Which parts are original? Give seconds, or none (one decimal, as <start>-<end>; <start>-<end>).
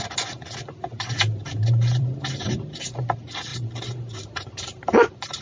0.0-1.4; 3.0-3.5